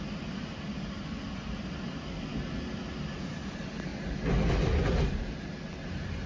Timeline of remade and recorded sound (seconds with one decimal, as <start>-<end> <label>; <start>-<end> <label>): 0.0-6.3 recorded